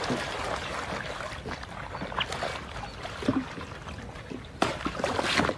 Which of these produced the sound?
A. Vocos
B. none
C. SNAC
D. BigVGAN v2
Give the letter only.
B